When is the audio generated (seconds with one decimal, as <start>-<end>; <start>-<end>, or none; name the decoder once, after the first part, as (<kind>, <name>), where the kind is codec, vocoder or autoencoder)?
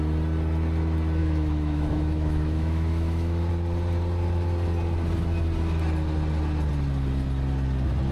1.2-3.5 (autoencoder, DAC-VAE)